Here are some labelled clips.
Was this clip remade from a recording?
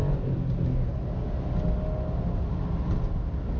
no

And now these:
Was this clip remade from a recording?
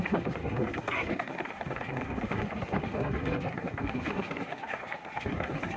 yes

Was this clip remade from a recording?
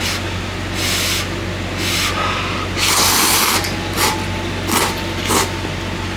no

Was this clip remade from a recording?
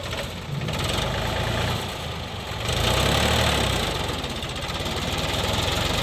no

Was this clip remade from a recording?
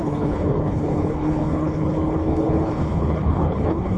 yes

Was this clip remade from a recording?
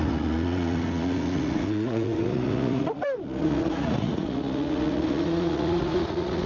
yes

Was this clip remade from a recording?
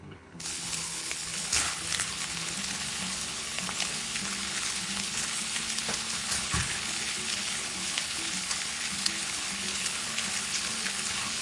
yes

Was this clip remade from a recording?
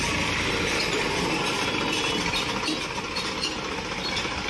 no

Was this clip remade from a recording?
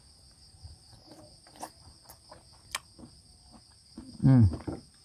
no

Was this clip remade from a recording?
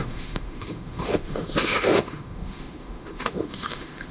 yes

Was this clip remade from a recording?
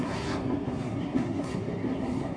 yes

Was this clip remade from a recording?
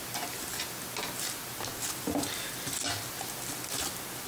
no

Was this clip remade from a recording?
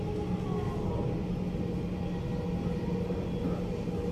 no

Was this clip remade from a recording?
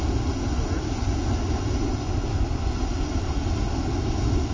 no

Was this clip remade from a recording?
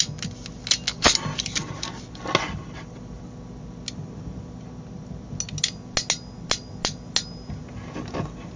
no